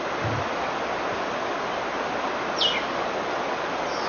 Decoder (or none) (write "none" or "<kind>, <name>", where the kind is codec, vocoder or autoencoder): none